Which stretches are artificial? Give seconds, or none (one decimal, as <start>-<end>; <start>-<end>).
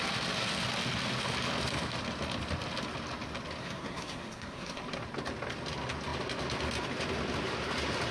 3.6-4.8